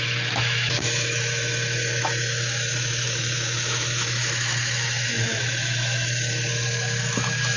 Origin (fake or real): fake